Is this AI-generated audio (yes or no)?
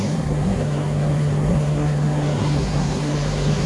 yes